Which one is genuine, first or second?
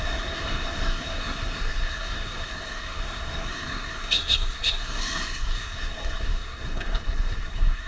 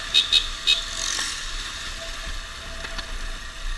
second